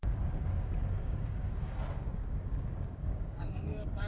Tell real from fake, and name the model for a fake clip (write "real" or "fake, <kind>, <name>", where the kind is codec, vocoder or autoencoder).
fake, codec, DAC